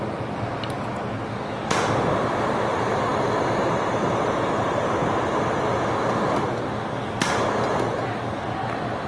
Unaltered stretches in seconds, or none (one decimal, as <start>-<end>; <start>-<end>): 0.0-9.1